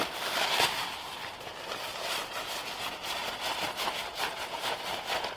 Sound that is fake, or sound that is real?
real